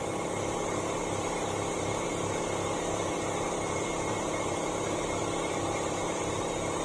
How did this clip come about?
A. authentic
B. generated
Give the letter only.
B